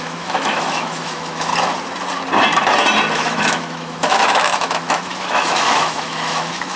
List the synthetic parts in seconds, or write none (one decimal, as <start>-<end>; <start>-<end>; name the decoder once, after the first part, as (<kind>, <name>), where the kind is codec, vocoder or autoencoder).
0.0-1.5 (autoencoder, DAC-VAE); 3.1-6.8